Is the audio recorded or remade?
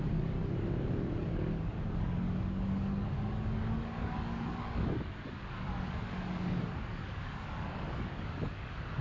remade